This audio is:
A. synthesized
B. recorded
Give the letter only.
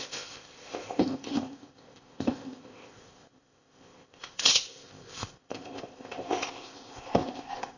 A